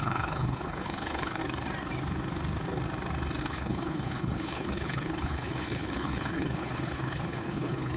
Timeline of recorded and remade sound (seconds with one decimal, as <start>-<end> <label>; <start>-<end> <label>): 0.0-1.4 remade; 1.4-3.4 recorded; 3.4-8.0 remade